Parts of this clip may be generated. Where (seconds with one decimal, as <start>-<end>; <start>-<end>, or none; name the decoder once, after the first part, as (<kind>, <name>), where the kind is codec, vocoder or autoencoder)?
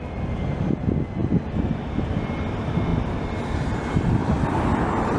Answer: none